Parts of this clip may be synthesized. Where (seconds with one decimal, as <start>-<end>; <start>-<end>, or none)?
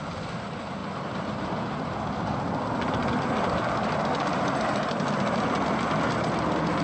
none